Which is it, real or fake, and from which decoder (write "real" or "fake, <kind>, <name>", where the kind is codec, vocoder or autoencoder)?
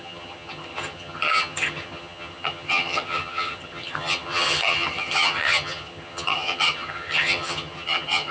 fake, vocoder, HiFi-GAN